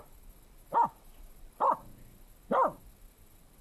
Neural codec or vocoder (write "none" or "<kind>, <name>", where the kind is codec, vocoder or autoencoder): none